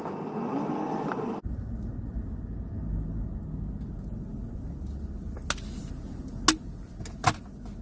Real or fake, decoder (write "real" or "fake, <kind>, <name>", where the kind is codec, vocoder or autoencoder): real